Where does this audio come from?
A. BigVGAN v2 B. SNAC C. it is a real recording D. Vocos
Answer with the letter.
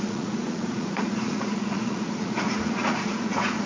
D